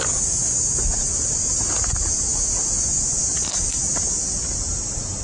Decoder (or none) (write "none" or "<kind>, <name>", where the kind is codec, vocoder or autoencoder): none